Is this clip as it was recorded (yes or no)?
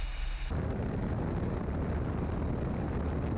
yes